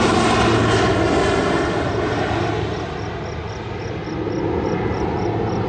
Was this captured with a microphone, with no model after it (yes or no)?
yes